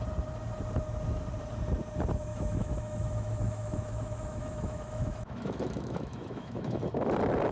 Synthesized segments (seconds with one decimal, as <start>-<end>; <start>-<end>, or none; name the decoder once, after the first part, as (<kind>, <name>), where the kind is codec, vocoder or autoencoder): 2.3-6.8 (autoencoder, DAC-VAE)